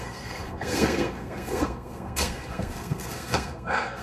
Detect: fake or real fake